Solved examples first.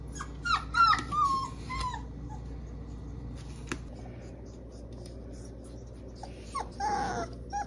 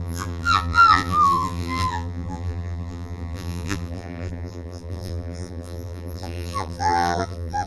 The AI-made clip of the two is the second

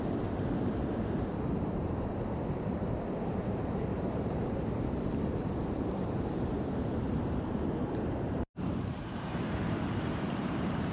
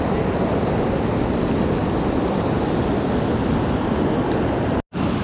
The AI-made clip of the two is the first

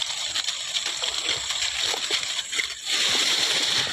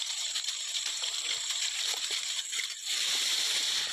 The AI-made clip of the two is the second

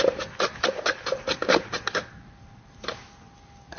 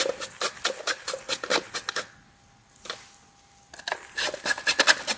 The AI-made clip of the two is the first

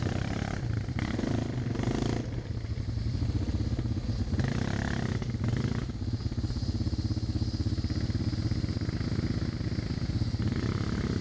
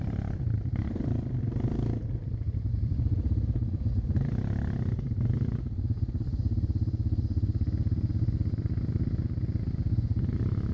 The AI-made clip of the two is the second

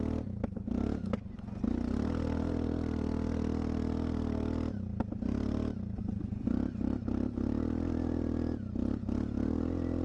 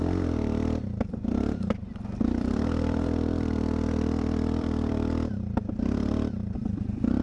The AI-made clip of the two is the second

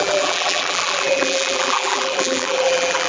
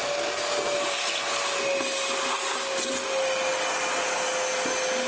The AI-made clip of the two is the first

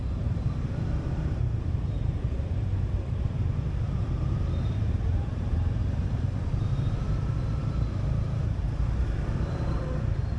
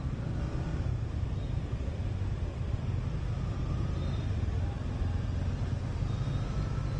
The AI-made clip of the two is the first